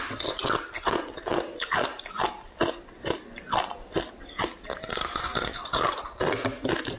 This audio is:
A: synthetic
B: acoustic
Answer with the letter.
B